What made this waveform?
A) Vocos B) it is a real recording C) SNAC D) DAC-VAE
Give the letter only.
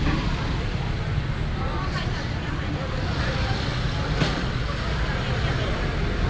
B